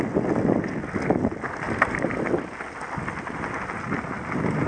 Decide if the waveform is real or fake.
real